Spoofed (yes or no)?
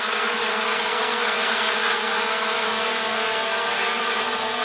yes